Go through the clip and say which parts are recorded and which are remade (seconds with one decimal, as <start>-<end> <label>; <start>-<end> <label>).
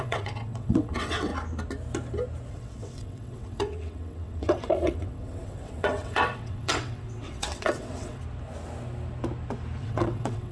0.0-1.3 remade; 1.3-2.5 recorded; 2.5-8.2 remade; 8.2-9.8 recorded; 9.8-10.5 remade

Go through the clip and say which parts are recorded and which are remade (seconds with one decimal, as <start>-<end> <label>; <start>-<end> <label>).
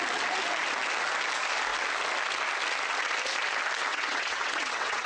0.0-3.9 recorded; 3.9-5.1 remade